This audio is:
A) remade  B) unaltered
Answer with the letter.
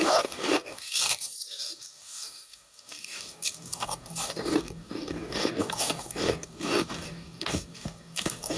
A